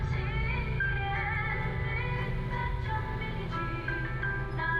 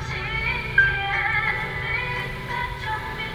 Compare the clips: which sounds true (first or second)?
first